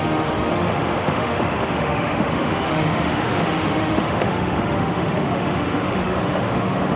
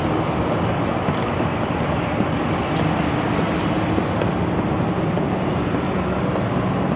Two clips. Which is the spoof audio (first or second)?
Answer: first